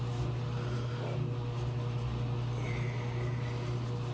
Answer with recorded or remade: recorded